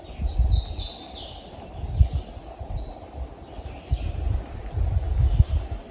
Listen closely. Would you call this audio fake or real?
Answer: real